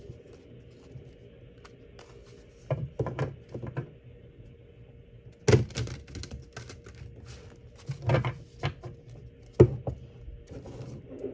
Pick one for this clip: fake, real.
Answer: real